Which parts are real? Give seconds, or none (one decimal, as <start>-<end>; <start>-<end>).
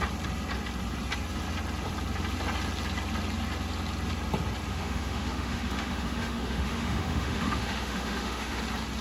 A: 0.0-4.7; 8.6-9.0